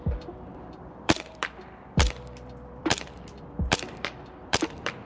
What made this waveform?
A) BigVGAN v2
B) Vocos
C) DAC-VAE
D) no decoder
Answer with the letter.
A